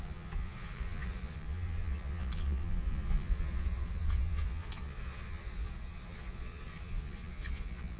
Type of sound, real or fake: fake